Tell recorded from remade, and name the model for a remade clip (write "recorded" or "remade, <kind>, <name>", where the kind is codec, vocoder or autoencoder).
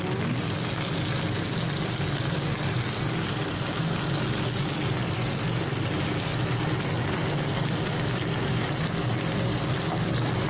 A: recorded